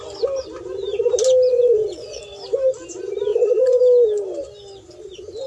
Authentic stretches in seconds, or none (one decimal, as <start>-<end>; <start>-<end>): 0.0-1.5; 2.2-3.3; 3.8-5.5